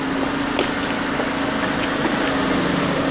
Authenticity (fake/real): real